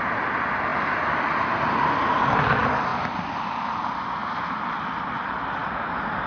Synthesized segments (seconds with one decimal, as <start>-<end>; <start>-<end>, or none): 2.9-3.7; 4.2-4.8